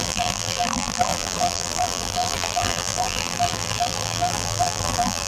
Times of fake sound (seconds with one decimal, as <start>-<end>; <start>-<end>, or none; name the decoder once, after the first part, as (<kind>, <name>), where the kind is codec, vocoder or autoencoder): 0.0-5.3 (vocoder, BigVGAN v2)